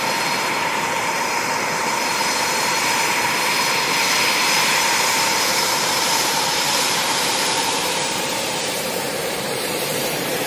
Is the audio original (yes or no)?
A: no